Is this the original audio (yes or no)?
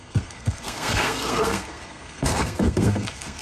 no